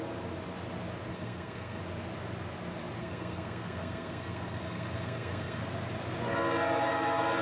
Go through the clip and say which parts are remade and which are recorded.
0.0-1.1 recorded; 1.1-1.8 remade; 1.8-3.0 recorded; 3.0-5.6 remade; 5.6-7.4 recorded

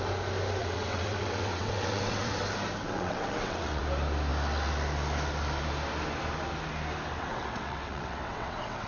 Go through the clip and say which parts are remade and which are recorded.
0.0-0.6 recorded; 0.6-2.4 remade; 2.4-2.8 recorded; 2.8-3.8 remade; 3.8-7.2 recorded; 7.2-8.9 remade

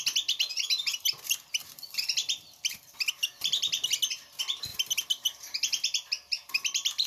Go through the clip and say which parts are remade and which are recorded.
0.0-0.4 recorded; 0.4-1.2 remade; 1.2-3.2 recorded; 3.2-3.7 remade; 3.7-4.7 recorded; 4.7-5.7 remade; 5.7-7.1 recorded